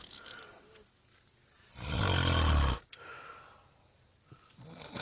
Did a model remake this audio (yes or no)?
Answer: no